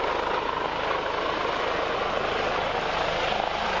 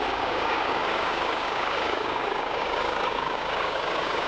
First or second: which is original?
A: first